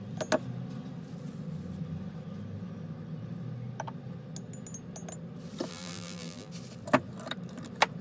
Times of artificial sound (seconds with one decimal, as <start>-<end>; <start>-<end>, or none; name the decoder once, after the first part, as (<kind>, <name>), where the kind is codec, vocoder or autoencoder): 5.7-6.5 (vocoder, BigVGAN v2)